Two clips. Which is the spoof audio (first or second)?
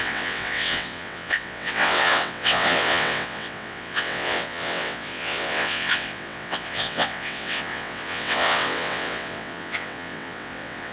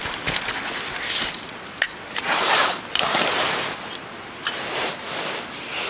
first